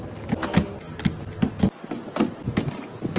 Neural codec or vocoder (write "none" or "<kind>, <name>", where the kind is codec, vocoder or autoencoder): none